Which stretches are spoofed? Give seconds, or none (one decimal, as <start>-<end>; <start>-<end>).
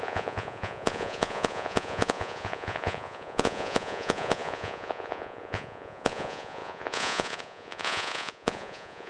0.0-9.1